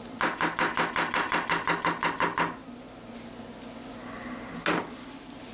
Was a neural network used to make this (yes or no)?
no